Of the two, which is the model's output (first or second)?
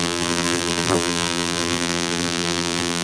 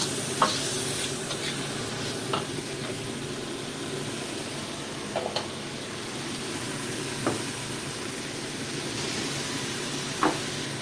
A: first